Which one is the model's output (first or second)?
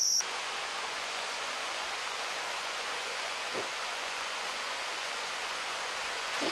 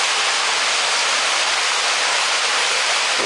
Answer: first